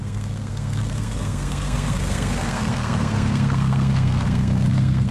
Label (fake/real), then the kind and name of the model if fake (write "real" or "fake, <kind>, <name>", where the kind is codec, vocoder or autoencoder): fake, codec, SNAC